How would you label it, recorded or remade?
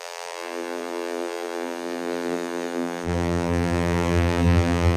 remade